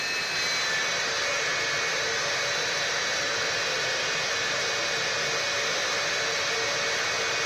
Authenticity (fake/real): real